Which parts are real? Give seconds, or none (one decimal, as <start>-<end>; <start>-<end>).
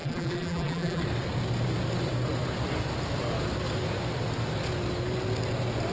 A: 1.0-5.9